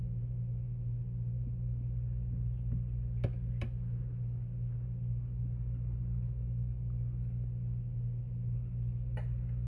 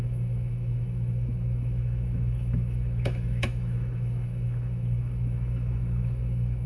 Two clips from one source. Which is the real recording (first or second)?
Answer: first